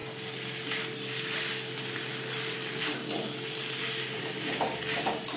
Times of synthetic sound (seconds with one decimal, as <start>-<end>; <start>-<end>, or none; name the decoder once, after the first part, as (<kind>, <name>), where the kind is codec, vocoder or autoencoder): none